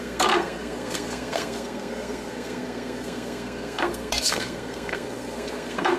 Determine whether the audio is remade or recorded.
remade